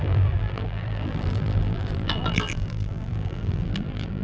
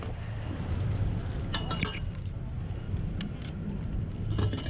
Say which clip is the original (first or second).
second